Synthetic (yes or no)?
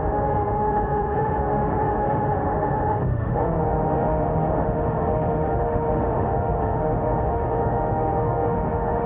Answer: yes